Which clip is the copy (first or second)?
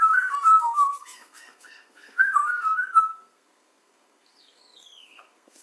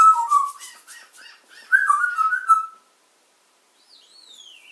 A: first